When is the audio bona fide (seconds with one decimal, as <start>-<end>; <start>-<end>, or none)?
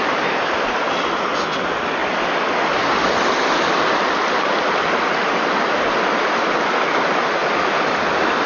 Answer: 0.0-7.4